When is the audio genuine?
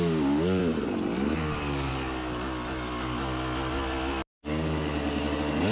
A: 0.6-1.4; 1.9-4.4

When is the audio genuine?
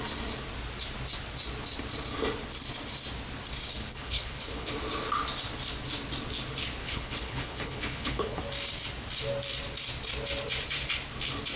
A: 0.0-3.7; 4.7-6.8; 8.4-11.6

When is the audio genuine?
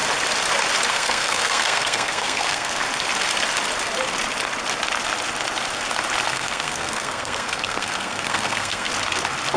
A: 0.0-0.9; 2.8-6.3; 8.9-9.6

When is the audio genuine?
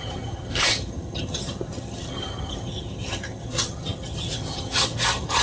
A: none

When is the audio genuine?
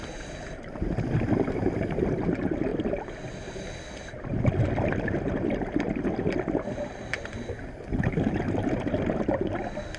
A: 0.0-10.0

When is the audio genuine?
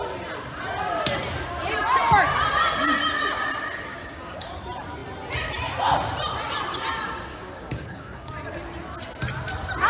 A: 0.0-3.9; 4.5-7.3; 8.3-9.9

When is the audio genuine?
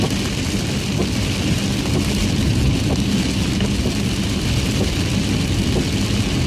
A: 0.0-6.5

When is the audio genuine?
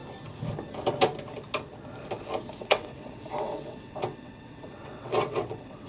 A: 0.0-2.6